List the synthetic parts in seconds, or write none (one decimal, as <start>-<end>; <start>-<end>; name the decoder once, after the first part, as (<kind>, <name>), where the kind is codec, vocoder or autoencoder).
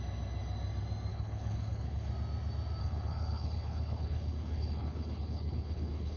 1.1-2.1 (codec, HILCodec); 2.8-6.2